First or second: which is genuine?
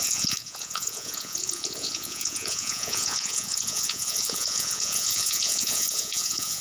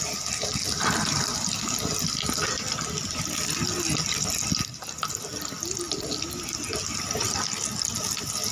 second